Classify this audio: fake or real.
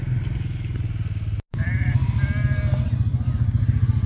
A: real